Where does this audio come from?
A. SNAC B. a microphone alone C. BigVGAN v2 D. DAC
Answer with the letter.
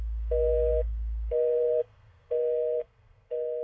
A